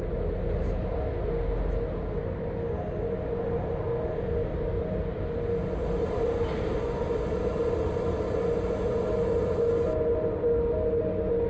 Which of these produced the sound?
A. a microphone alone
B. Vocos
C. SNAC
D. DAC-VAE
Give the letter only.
A